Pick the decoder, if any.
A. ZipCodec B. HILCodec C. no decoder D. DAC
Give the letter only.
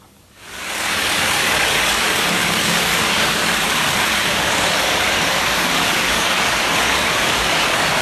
D